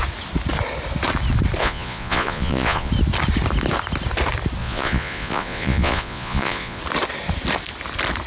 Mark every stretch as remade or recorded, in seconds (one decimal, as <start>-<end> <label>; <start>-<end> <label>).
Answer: 0.0-1.6 recorded; 1.6-2.9 remade; 2.9-4.6 recorded; 4.6-6.8 remade; 6.8-8.3 recorded